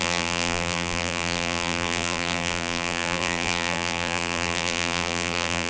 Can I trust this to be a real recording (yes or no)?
no